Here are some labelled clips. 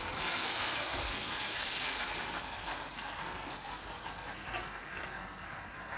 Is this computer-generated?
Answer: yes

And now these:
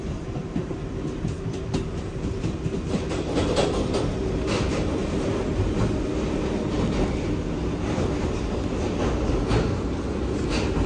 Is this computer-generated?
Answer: no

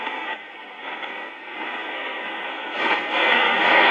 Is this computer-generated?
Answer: yes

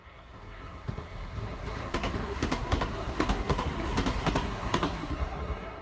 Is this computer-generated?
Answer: yes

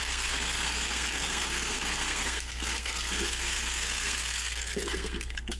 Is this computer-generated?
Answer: yes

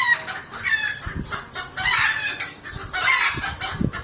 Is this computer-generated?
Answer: no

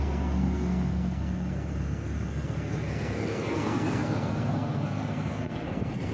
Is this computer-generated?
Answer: yes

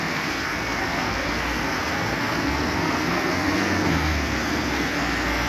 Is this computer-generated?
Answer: yes